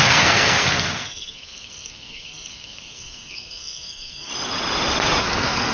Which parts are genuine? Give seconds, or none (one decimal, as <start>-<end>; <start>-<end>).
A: 4.3-5.2